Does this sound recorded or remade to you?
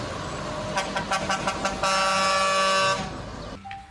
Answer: recorded